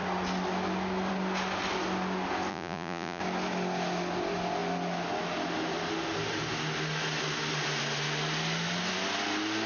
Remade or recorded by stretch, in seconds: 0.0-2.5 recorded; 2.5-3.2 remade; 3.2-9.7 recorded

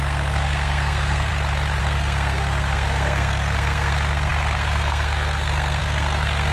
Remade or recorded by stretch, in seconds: 0.0-1.3 remade; 1.3-1.8 recorded; 1.8-6.5 remade

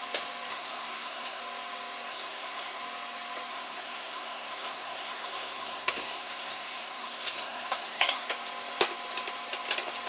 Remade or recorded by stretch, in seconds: 0.0-0.5 recorded; 0.5-1.4 remade; 1.4-2.1 recorded; 2.1-2.8 remade; 2.8-3.5 recorded; 3.5-8.3 remade; 8.3-10.1 recorded

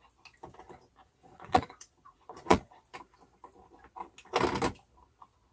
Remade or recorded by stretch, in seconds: 0.0-1.0 recorded; 1.0-2.8 remade; 2.8-5.5 recorded

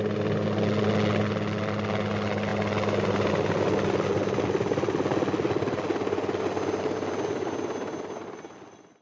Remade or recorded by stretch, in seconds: 0.0-9.0 recorded

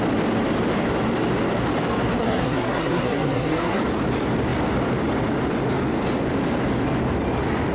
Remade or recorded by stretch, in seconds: 0.0-2.2 recorded; 2.2-3.8 remade; 3.8-7.7 recorded

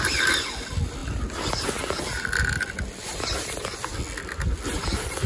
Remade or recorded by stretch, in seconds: 0.0-5.3 recorded